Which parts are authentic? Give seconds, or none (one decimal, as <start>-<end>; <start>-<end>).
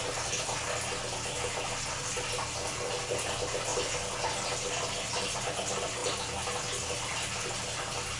0.0-8.2